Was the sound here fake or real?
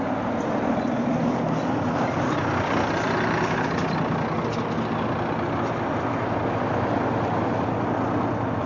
real